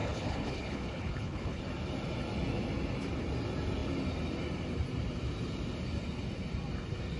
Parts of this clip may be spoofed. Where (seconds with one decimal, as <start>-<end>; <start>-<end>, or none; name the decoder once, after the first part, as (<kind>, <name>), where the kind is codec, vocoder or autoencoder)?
0.0-1.6 (codec, HILCodec)